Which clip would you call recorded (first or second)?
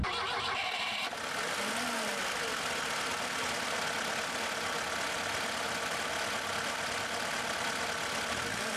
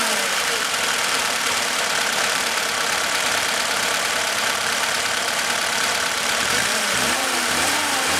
first